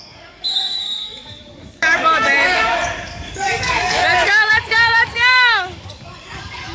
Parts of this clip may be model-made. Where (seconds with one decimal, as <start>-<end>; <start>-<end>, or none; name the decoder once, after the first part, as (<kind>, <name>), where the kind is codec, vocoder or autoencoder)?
0.0-6.7 (codec, DAC)